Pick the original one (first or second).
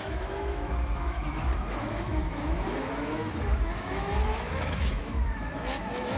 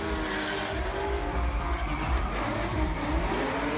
second